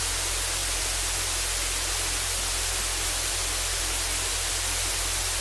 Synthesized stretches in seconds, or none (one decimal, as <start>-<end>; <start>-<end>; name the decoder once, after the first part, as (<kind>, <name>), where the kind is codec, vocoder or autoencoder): none